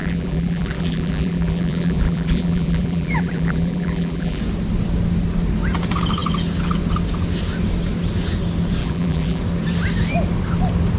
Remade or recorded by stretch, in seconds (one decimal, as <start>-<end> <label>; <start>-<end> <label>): 0.0-4.4 remade; 4.4-8.8 recorded; 8.8-9.4 remade; 9.4-11.0 recorded